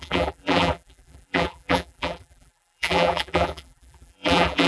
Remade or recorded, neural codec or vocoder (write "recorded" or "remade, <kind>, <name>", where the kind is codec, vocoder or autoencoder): remade, vocoder, BigVGAN v2